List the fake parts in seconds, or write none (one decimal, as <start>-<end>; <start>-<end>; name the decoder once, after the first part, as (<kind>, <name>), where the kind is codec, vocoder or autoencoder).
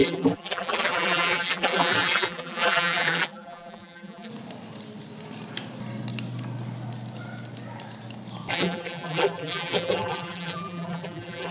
0.0-4.3 (vocoder, BigVGAN v2); 8.5-11.5